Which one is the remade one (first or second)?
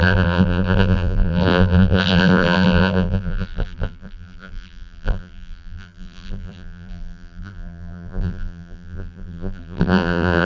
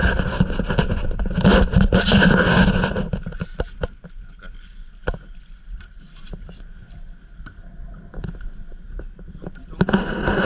first